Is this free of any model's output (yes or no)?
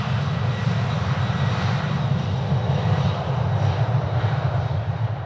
yes